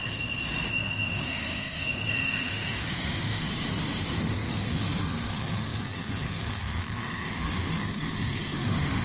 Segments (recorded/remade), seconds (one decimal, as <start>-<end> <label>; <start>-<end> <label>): 0.0-0.7 recorded; 0.7-3.5 remade; 3.5-4.2 recorded; 4.2-9.0 remade